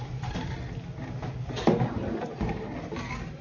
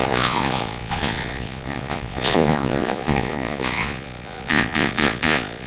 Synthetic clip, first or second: second